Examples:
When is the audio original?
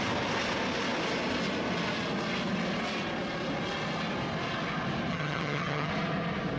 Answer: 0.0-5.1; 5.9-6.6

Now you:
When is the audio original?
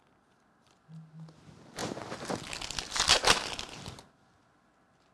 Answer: 0.0-1.8; 2.4-5.1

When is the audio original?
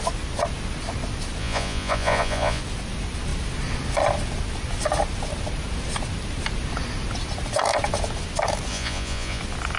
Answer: 0.0-1.4; 2.6-8.7; 9.4-9.8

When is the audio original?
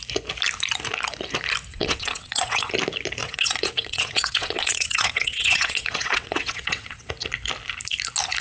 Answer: 0.0-1.7; 2.7-3.2; 7.1-8.4